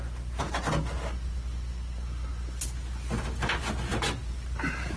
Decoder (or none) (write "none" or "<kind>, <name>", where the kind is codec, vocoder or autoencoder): none